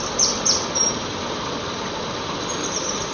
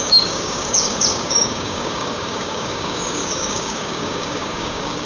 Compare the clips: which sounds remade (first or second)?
second